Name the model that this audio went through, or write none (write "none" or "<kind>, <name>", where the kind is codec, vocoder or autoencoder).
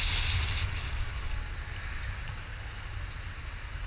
none